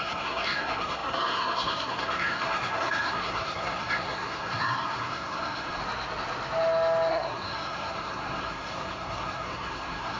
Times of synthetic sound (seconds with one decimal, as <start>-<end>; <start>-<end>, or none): 0.0-5.8; 7.1-10.2

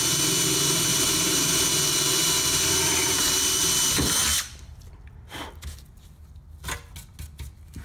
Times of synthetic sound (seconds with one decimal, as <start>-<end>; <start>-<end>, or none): 0.9-1.6; 2.2-4.9

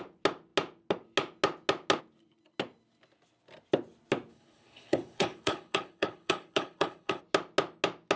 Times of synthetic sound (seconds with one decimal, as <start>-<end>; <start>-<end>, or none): 4.3-7.2

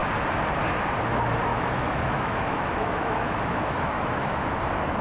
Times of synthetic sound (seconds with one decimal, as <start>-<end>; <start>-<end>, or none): 1.5-4.5

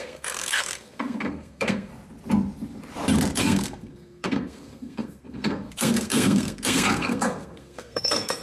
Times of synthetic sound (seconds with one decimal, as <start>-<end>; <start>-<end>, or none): 0.0-1.9; 3.4-8.4

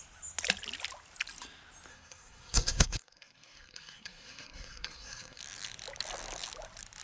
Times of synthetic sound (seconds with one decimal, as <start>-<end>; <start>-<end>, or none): 1.9-5.4